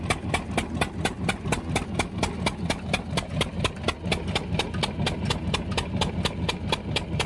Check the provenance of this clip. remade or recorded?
recorded